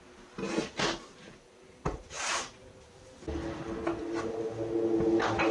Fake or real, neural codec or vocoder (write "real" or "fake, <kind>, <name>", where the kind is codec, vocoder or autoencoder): real